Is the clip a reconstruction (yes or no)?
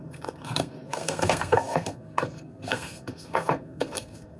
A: yes